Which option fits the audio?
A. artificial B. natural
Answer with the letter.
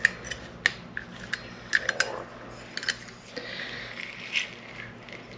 B